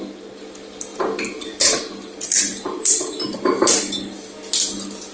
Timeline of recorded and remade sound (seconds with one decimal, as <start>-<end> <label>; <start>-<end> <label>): 0.0-0.9 recorded; 0.9-4.0 remade; 4.0-5.1 recorded